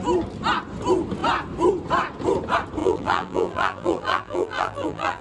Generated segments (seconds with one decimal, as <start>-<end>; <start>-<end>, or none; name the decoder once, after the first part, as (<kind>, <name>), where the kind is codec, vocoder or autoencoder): 2.8-5.2 (vocoder, BigVGAN v2)